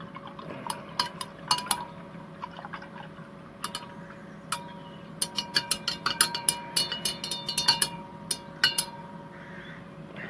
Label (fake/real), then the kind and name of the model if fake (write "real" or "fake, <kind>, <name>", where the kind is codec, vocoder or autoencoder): real